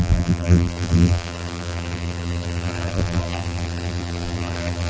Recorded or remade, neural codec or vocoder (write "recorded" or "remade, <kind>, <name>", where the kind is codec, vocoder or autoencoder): remade, vocoder, BigVGAN v2